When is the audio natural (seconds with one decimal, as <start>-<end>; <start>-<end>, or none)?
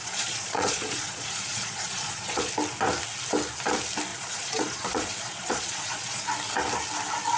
2.5-4.1; 6.3-7.4